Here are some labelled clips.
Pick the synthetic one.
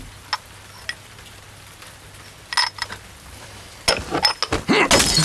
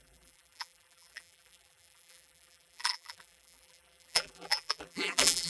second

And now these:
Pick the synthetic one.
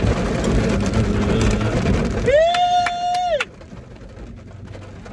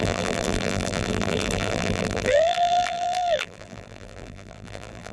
second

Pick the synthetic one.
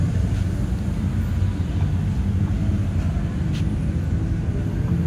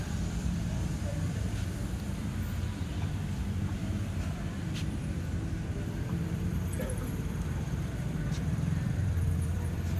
second